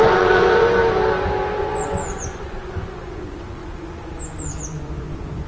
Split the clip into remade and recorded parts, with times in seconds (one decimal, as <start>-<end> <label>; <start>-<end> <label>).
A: 0.0-0.8 remade; 0.8-1.6 recorded; 1.6-5.5 remade